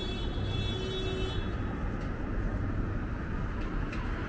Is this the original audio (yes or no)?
yes